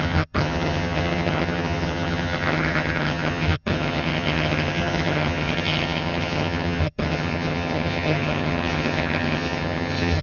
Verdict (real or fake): fake